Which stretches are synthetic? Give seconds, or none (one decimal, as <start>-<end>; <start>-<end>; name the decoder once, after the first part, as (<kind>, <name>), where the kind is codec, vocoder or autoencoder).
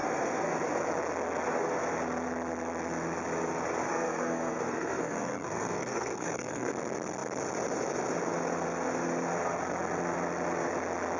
0.0-0.5 (codec, SNAC); 3.9-6.7